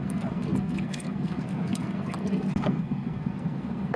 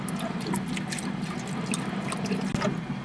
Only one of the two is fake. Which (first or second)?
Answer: first